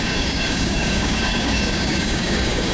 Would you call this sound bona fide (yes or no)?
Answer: no